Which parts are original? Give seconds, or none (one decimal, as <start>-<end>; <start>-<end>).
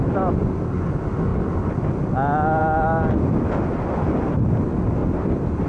0.0-5.7